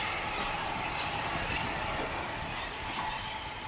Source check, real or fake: real